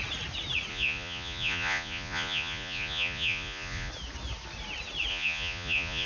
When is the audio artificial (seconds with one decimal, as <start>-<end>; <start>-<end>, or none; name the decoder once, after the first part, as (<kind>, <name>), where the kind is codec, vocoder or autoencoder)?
0.7-3.9 (vocoder, Vocos); 5.1-6.1